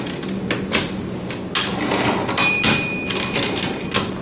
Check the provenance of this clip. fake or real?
real